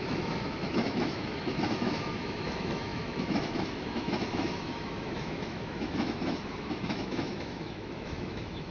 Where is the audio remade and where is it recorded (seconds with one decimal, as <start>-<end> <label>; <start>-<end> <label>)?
0.0-8.7 remade